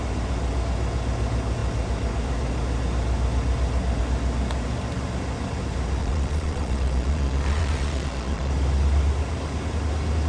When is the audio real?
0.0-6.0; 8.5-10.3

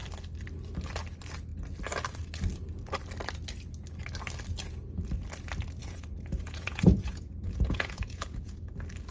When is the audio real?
0.0-5.8; 8.7-9.1

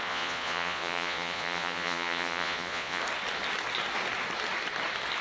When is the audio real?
3.0-5.2

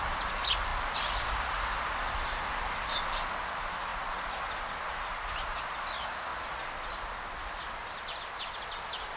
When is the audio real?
0.0-9.2

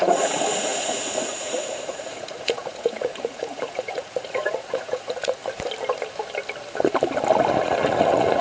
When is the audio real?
5.4-7.5

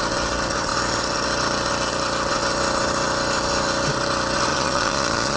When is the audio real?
0.0-4.5

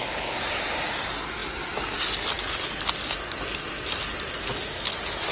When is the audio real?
0.0-5.3

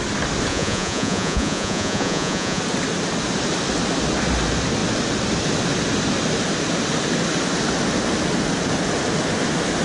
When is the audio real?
0.0-0.5; 2.6-9.8